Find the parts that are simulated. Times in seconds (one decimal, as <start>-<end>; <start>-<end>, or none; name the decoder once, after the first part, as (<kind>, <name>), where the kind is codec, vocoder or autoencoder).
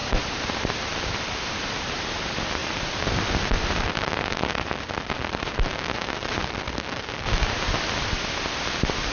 0.0-2.2 (vocoder, BigVGAN v2); 2.6-7.0